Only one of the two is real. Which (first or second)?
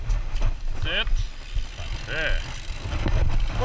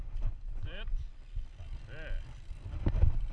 first